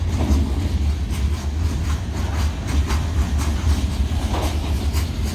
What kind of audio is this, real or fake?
real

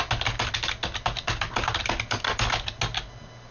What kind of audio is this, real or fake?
real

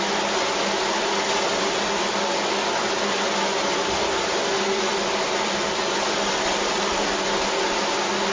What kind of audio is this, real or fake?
real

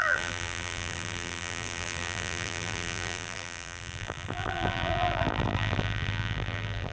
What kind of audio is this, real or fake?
fake